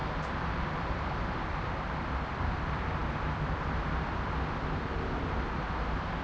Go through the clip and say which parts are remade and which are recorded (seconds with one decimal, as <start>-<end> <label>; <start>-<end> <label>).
0.0-6.2 remade